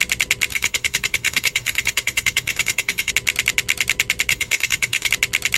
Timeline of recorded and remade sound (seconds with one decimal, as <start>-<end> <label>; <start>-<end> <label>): 0.0-0.5 recorded; 0.5-3.1 remade; 3.1-4.3 recorded; 4.3-5.1 remade; 5.1-5.6 recorded